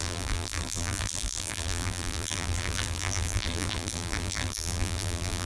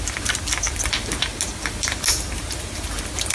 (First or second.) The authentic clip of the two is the second